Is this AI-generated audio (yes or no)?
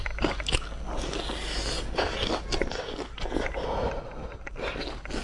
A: no